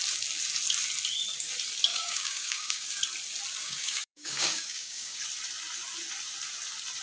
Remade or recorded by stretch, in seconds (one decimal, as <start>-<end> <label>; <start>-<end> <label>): 0.0-1.9 recorded; 1.9-3.0 remade; 3.0-3.6 recorded; 3.6-5.2 remade; 5.2-7.0 recorded